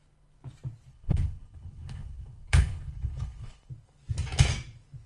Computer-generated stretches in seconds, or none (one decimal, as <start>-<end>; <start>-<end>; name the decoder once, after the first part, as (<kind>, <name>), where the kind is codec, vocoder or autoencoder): 0.9-3.7 (codec, HILCodec)